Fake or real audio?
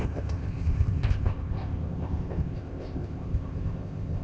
fake